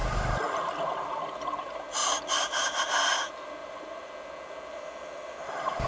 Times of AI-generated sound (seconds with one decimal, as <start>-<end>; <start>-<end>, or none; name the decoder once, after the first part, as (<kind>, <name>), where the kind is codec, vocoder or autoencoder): 2.0-2.8 (vocoder, BigVGAN v2); 3.6-4.1